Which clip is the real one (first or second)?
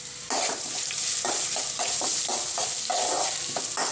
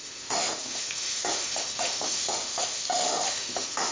first